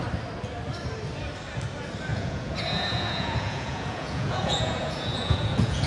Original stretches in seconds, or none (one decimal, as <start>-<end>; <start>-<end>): 0.0-2.1